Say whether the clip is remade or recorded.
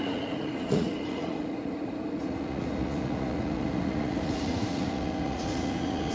remade